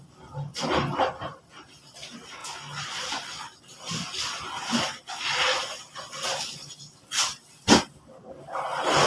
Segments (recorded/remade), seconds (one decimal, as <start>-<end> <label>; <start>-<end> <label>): 0.0-0.5 recorded; 0.5-1.7 remade; 1.7-5.6 recorded; 5.6-7.1 remade; 7.1-9.1 recorded